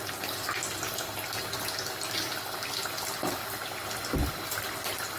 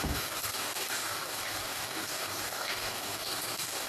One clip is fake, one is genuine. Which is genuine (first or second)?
first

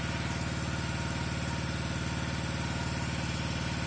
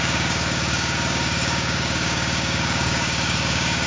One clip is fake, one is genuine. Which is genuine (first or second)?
first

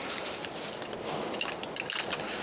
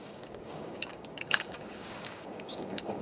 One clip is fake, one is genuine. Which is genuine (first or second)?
first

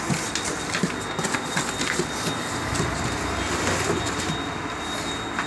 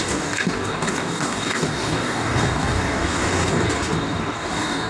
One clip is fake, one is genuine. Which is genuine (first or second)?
first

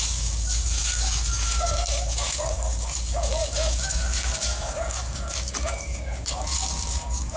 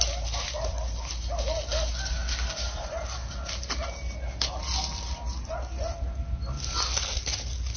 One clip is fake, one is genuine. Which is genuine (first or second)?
second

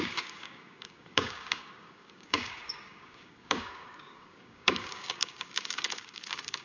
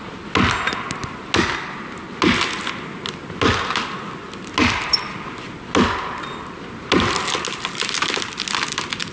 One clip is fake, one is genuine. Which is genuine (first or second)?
second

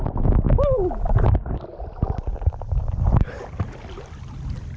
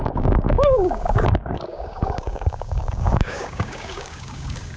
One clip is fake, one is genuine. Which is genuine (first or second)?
first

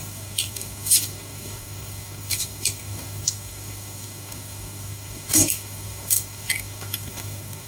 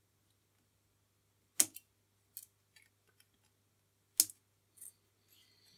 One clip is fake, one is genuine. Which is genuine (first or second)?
second